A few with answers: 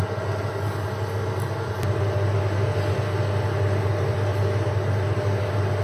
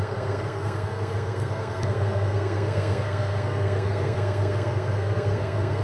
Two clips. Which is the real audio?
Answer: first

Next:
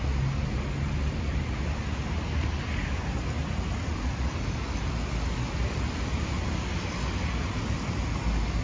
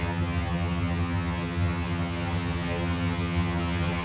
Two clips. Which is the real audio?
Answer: first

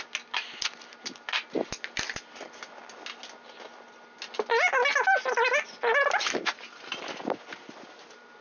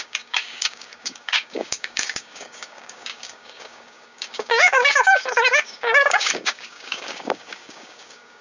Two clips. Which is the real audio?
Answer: first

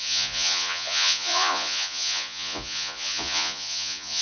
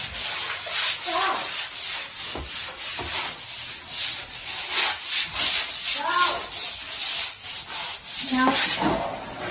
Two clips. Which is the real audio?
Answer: second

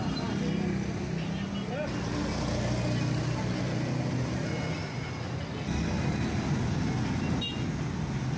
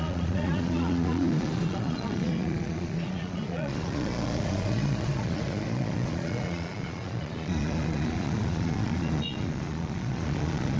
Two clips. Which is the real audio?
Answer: first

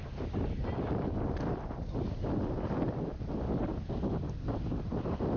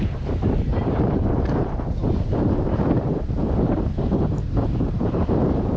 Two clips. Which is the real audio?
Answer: first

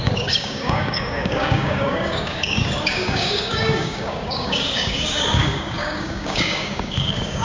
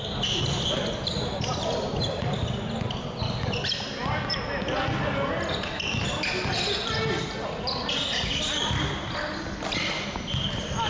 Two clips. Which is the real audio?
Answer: second